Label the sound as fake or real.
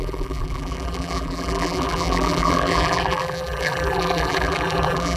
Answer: fake